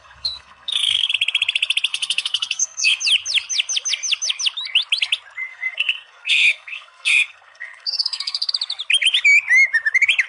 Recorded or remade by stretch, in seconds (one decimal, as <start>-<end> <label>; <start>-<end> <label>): 0.0-1.1 remade; 1.1-1.9 recorded; 1.9-3.0 remade; 3.0-5.5 recorded; 5.5-8.5 remade; 8.5-10.3 recorded